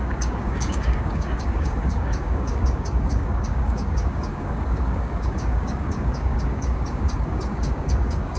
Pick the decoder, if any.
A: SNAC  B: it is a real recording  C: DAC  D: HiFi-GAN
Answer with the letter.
C